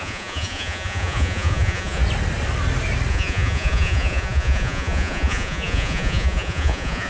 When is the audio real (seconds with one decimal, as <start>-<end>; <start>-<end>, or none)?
2.0-3.1